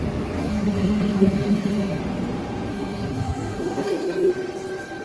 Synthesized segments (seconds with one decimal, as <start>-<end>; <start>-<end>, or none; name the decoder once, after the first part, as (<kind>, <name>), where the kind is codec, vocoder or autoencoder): 0.4-2.0 (codec, SNAC); 2.7-4.3